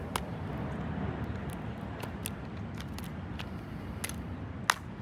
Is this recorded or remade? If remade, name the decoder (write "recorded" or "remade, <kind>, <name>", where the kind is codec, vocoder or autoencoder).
recorded